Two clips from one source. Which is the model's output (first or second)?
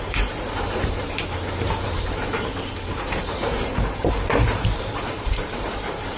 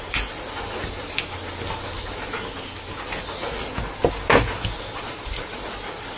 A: first